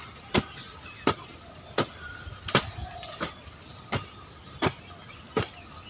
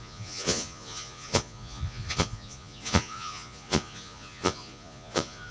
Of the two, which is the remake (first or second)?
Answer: second